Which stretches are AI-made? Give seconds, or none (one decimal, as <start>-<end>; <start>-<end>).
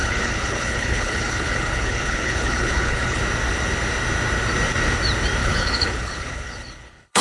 0.0-3.2; 5.4-7.2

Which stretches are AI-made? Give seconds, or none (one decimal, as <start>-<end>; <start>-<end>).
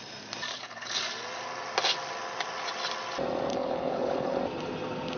0.5-1.0; 3.5-4.4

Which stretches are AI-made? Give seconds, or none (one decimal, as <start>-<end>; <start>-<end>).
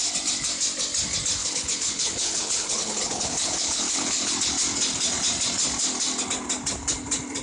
1.4-4.3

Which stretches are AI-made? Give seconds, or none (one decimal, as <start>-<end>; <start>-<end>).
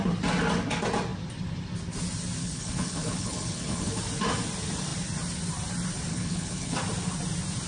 2.4-4.0; 6.1-6.7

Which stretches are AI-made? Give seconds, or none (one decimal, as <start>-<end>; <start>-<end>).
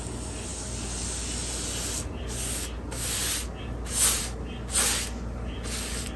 none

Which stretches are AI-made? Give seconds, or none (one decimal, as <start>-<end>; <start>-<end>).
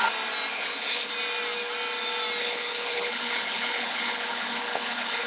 0.5-1.1; 2.4-5.3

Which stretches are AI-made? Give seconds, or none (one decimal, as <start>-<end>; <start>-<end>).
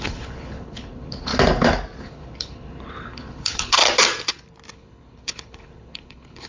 0.0-1.3; 2.0-3.8; 4.7-6.5